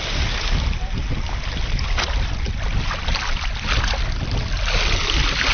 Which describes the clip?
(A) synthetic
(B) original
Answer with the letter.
B